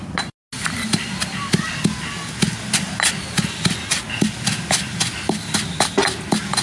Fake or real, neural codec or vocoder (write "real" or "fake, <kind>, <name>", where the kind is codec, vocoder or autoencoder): real